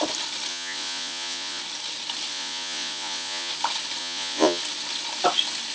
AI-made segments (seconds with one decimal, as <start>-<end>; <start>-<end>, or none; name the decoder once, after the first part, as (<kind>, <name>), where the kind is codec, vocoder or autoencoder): 0.5-1.6 (vocoder, Vocos); 2.3-3.5; 4.0-4.6